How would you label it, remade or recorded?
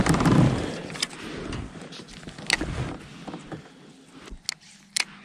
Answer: recorded